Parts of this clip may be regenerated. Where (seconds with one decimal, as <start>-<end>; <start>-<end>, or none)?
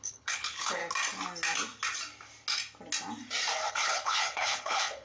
0.0-0.8; 3.7-5.0